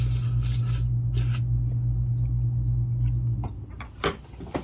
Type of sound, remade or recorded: recorded